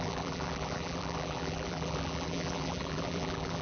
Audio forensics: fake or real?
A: fake